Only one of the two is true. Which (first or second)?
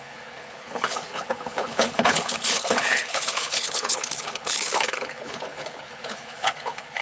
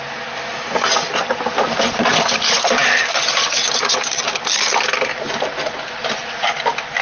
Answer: second